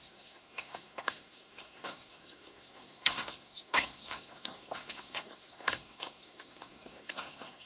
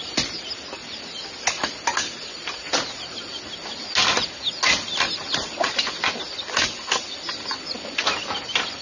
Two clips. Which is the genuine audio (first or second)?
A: second